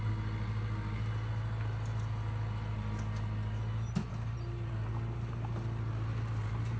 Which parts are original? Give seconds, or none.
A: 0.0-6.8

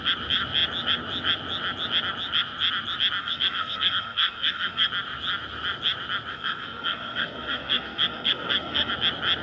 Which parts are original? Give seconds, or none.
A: 0.0-3.2; 4.9-6.3; 8.9-9.4

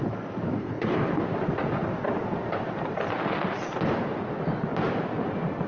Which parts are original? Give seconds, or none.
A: 0.0-0.6; 1.2-5.7

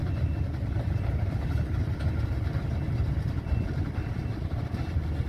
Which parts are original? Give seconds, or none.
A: 2.1-5.3

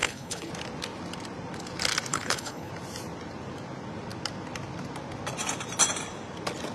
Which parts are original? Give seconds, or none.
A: 0.5-2.1; 2.7-6.7

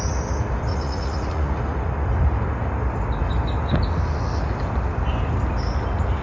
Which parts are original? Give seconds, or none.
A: 0.0-0.7; 1.6-6.2

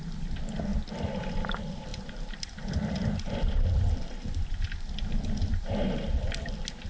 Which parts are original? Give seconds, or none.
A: 0.0-6.9

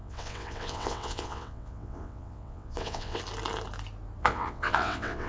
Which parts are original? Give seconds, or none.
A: 3.2-4.2